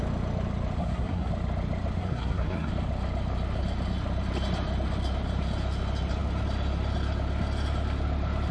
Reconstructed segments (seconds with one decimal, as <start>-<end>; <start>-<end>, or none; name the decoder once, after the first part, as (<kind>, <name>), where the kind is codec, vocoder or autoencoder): 0.8-1.3 (codec, SNAC); 2.0-2.7